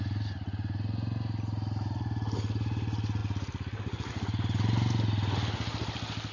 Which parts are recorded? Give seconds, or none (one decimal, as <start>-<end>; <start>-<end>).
0.0-6.3